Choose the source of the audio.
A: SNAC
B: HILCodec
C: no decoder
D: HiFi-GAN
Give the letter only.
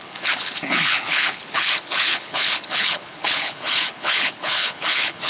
B